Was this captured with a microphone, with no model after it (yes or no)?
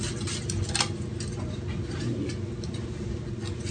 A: yes